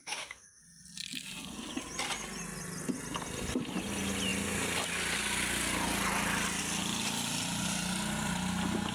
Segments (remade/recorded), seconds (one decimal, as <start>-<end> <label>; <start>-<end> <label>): 0.0-0.6 remade; 0.6-8.9 recorded